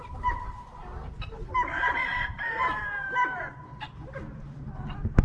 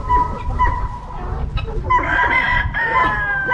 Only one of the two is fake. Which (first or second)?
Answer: first